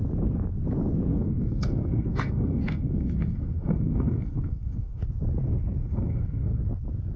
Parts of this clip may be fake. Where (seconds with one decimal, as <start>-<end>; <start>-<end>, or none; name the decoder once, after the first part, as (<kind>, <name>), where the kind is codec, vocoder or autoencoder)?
1.1-5.0 (codec, SNAC); 5.8-6.6

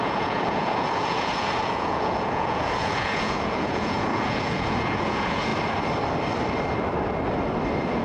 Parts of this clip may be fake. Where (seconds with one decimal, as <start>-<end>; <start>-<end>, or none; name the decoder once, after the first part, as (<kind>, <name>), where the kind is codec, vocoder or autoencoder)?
0.0-5.5 (vocoder, Vocos)

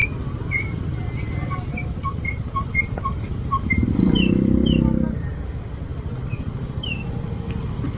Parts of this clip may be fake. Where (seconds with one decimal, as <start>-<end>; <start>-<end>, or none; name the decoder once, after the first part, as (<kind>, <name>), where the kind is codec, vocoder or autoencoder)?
0.0-3.9 (vocoder, BigVGAN v2)

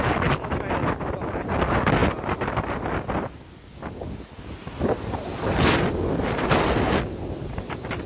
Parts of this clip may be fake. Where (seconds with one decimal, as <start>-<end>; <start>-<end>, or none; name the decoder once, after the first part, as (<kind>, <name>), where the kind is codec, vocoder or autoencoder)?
none

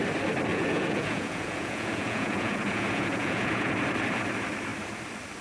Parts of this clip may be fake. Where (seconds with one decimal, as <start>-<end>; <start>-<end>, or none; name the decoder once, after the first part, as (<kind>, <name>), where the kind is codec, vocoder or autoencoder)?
0.5-3.7 (vocoder, Vocos)

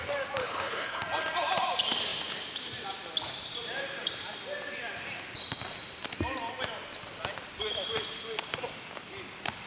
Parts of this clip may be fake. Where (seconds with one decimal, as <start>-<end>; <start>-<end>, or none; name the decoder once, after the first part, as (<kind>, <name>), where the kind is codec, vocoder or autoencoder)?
0.4-1.0 (codec, HILCodec)